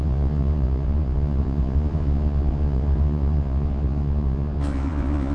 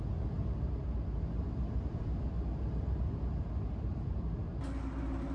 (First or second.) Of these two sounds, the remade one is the first